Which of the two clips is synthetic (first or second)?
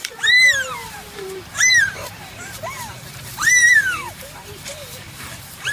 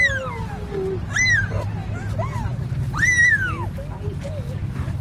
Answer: first